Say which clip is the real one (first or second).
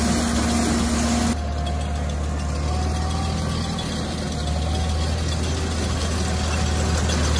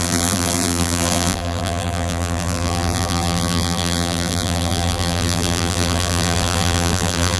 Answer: first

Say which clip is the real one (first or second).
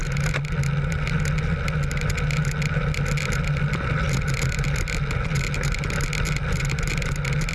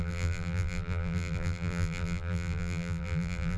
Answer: first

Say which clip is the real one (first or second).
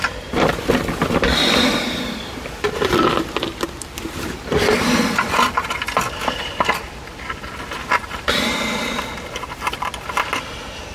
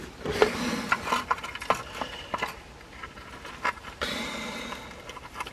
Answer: second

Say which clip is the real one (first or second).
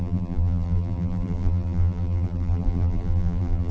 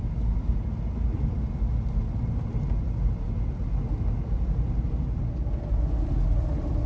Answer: second